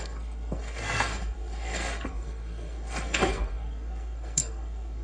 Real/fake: fake